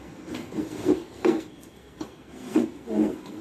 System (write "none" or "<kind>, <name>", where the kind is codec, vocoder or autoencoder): codec, SNAC